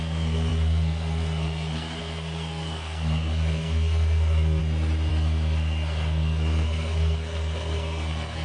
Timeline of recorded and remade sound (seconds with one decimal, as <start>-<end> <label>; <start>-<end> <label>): 0.0-4.6 remade; 4.6-5.1 recorded; 5.1-8.4 remade

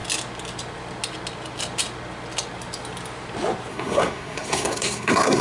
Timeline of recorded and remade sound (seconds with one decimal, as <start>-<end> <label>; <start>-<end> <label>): 0.0-3.7 recorded; 3.7-5.4 remade

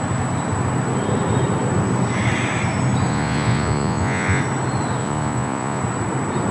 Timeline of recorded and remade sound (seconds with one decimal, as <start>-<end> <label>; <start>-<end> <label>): 0.0-3.1 recorded; 3.1-4.4 remade; 4.4-5.0 recorded; 5.0-5.8 remade; 5.8-6.5 recorded

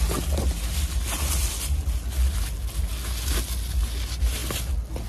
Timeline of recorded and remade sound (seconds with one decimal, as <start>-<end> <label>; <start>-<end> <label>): 0.0-5.1 recorded

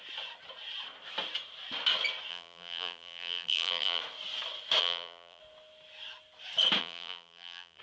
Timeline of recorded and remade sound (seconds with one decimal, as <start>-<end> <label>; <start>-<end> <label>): 0.0-2.3 recorded; 2.3-4.0 remade; 4.0-4.8 recorded; 4.8-5.4 remade; 5.4-6.8 recorded; 6.8-7.8 remade

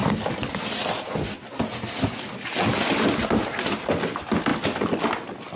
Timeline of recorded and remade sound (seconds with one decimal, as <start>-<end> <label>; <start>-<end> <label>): 0.0-5.6 recorded

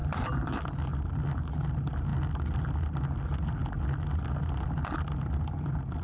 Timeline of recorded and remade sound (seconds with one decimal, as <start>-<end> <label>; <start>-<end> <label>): 0.0-6.0 recorded